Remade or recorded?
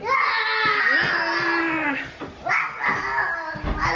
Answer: recorded